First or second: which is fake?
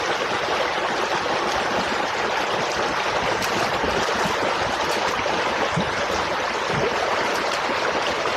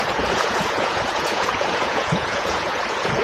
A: second